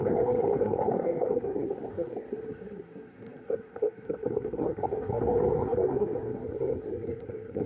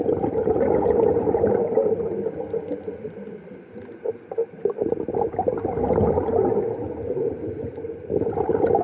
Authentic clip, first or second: second